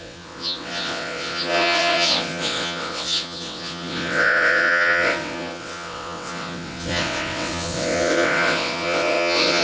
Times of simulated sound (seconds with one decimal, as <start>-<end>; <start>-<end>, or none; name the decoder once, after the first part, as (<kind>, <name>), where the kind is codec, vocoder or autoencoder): 0.0-9.6 (vocoder, WaveNeXt)

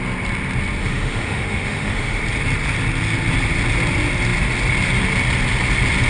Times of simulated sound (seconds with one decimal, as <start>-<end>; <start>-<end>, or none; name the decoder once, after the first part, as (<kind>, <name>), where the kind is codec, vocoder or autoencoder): 0.8-2.2 (autoencoder, DAC-VAE)

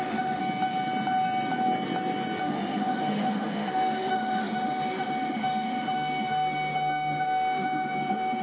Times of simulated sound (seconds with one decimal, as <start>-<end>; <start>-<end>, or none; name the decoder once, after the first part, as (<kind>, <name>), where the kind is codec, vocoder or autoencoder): 0.0-0.4 (autoencoder, DAC-VAE); 2.4-8.4

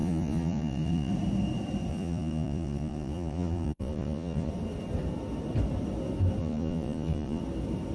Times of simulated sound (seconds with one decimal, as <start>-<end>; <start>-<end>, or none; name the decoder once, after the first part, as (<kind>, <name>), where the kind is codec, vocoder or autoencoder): 0.0-1.1 (vocoder, Vocos); 1.9-4.5; 6.4-7.4

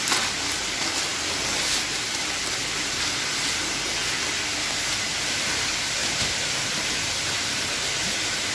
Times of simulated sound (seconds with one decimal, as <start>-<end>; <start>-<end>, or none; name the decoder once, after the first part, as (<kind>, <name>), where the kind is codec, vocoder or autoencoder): 6.0-8.0 (vocoder, BigVGAN v2)

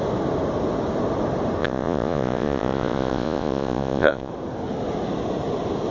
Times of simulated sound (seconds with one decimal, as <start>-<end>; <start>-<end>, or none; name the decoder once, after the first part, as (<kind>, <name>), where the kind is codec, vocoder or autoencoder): 1.6-4.3 (vocoder, Vocos)